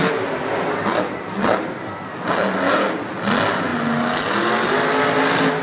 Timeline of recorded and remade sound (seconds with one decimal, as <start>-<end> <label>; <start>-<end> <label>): 0.0-5.6 recorded